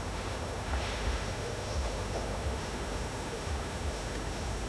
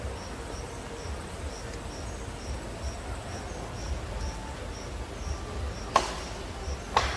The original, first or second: second